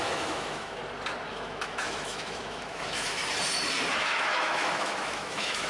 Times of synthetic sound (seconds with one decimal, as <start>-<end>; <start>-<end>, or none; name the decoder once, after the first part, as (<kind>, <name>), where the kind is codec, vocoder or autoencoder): 0.0-0.8 (autoencoder, DAC-VAE); 1.3-3.2; 3.9-5.7